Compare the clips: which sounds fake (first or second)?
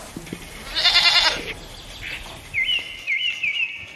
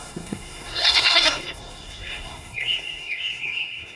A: second